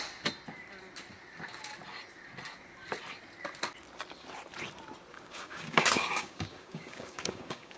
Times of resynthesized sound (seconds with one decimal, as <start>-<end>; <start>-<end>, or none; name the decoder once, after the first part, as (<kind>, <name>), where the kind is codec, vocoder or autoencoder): 5.1-7.8 (codec, DAC)